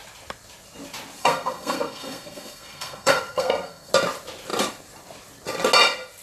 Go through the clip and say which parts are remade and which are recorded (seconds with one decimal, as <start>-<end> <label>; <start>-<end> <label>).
0.0-1.2 recorded; 1.2-3.9 remade; 3.9-6.2 recorded